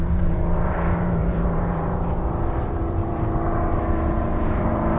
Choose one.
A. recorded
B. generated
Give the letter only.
B